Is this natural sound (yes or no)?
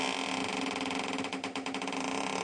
yes